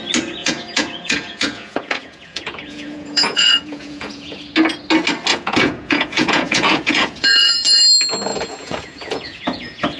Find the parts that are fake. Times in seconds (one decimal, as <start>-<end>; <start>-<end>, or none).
0.4-4.4; 5.3-7.8; 8.3-10.0